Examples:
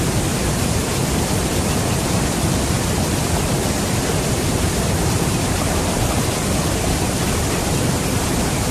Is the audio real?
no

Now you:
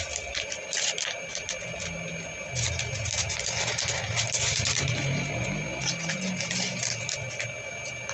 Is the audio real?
yes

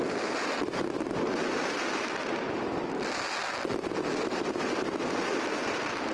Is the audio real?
yes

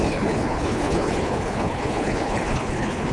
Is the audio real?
no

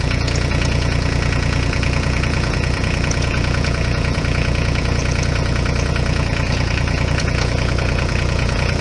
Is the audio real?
no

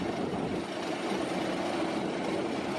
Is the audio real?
yes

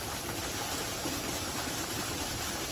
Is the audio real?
no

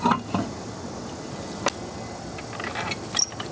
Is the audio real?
yes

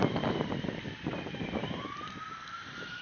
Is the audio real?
no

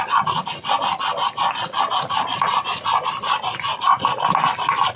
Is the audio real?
yes